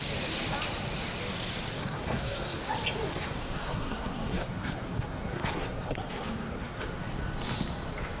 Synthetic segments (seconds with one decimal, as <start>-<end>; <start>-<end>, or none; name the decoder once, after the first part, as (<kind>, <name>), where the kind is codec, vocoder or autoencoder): 1.7-2.6 (codec, SNAC); 3.1-7.0